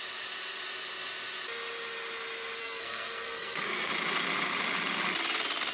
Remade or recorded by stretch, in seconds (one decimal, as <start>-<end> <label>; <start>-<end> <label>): 0.0-2.6 recorded; 2.6-3.9 remade; 3.9-5.7 recorded